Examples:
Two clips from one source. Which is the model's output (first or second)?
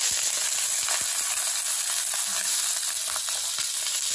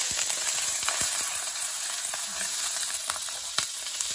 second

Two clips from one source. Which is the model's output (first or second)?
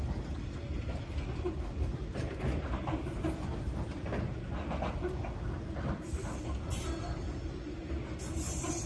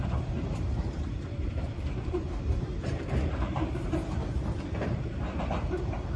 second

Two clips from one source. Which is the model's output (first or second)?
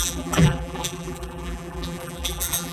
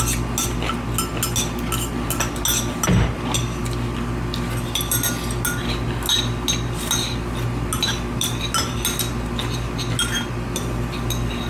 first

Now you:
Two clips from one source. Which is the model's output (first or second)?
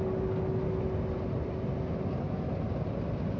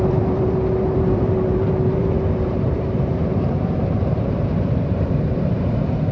second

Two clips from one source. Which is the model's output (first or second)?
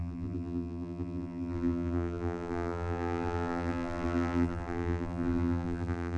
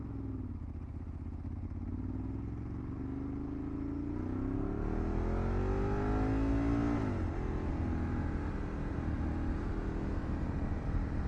first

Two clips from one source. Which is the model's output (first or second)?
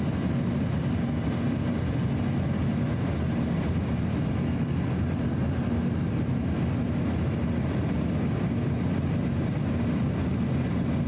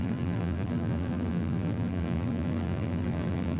second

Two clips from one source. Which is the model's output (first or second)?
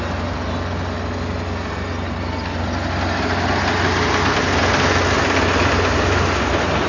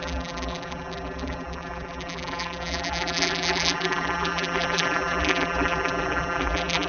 second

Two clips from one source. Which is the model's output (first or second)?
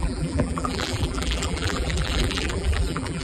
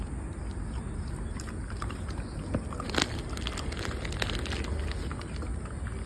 first